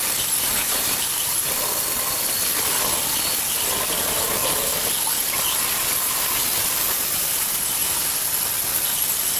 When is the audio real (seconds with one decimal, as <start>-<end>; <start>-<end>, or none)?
0.0-0.5; 1.7-9.4